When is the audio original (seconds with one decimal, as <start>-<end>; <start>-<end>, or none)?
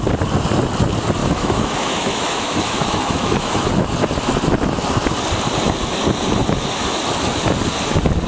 0.0-1.2; 3.7-8.3